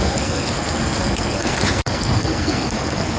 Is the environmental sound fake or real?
fake